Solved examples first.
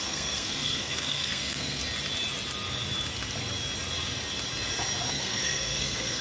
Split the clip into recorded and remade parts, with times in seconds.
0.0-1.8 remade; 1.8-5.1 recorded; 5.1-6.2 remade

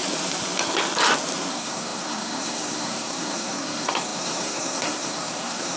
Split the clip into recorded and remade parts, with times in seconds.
0.0-1.5 recorded; 1.5-5.8 remade

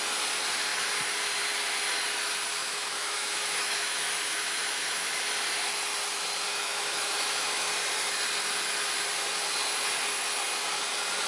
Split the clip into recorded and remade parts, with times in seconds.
0.0-2.6 recorded; 2.6-5.2 remade; 5.2-6.5 recorded; 6.5-7.7 remade; 7.7-11.3 recorded